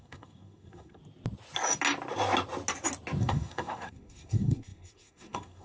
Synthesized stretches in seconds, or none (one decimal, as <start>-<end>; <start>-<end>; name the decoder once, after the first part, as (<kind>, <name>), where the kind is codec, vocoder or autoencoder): 0.0-1.0 (codec, SNAC); 3.2-5.6